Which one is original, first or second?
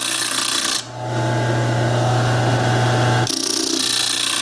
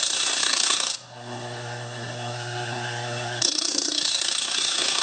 first